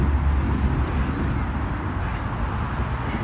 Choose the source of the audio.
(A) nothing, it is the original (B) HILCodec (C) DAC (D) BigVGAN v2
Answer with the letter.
A